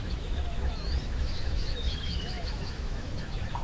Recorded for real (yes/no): no